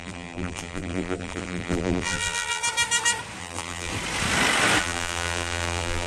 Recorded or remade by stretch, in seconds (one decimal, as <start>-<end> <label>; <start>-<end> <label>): 0.0-2.6 remade; 2.6-3.4 recorded; 3.4-3.9 remade; 3.9-4.8 recorded; 4.8-6.1 remade